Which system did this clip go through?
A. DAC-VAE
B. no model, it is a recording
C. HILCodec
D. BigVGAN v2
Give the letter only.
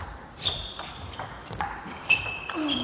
D